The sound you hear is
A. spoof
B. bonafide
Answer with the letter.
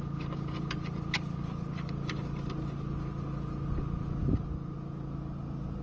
B